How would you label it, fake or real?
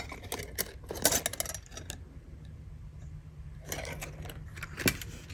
real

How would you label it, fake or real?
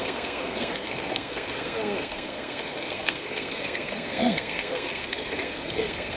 fake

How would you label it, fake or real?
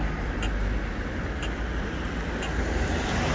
real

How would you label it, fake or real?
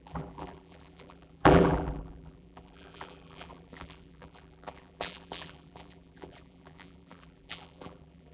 fake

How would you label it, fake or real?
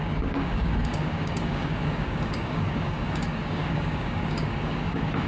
fake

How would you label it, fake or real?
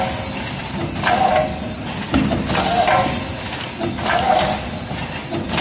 real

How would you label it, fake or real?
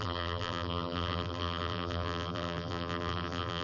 fake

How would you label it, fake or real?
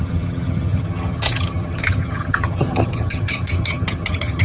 fake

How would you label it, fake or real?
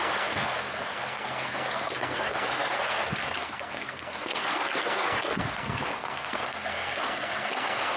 fake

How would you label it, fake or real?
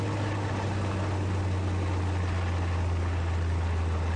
real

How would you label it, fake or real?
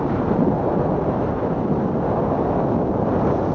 real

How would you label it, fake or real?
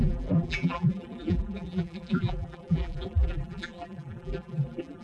fake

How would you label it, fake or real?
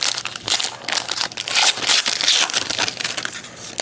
real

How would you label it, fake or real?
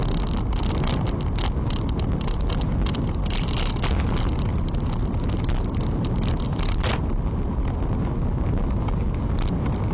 real